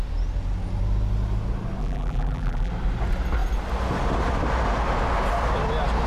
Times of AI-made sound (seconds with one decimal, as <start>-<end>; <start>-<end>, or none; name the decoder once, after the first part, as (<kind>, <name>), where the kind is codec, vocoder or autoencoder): 1.8-2.7 (vocoder, BigVGAN v2)